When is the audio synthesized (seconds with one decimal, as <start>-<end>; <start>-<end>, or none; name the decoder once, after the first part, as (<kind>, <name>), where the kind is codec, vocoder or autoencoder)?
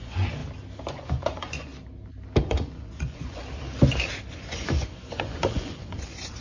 0.0-0.4 (vocoder, Vocos); 0.9-1.7; 2.4-3.4; 4.3-6.4